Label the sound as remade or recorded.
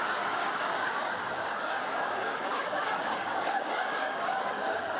remade